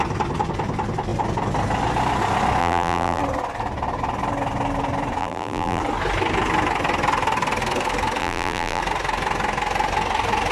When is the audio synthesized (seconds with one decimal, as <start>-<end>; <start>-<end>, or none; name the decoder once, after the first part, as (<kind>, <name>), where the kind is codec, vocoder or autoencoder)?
2.6-3.2 (vocoder, BigVGAN v2); 5.2-5.8; 8.2-8.8